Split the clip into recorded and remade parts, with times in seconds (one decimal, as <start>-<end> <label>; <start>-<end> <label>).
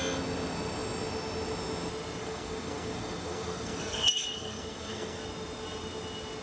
0.0-2.2 recorded; 2.2-5.2 remade; 5.2-6.4 recorded